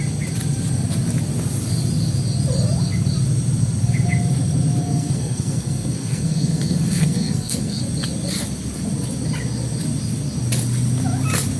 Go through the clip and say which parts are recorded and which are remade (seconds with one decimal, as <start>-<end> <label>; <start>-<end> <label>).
0.0-4.8 recorded; 4.8-7.8 remade; 7.8-11.6 recorded